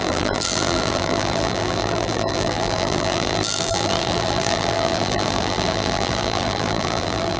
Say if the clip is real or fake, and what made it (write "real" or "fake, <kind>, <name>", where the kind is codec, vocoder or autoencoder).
fake, vocoder, BigVGAN v2